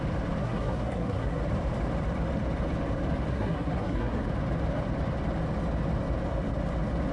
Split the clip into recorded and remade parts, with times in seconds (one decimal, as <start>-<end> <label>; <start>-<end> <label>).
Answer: 0.0-0.4 recorded; 0.4-1.4 remade; 1.4-3.3 recorded; 3.3-4.3 remade; 4.3-7.1 recorded